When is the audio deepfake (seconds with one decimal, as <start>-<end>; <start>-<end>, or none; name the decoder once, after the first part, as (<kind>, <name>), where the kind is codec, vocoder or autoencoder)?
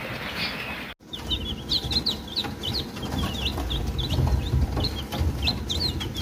none